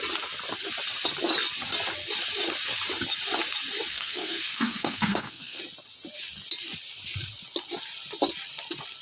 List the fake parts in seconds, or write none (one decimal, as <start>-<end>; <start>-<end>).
3.9-5.6